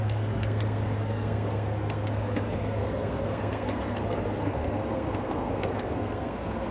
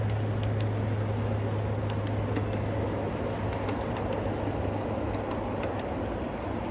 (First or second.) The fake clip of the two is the first